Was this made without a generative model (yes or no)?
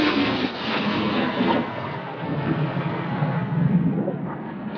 no